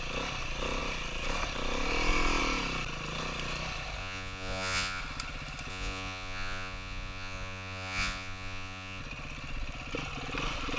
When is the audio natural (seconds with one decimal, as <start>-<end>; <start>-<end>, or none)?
0.0-4.0; 5.0-5.7; 9.0-10.8